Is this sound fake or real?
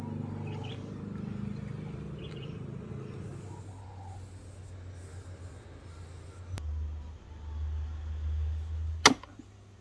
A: real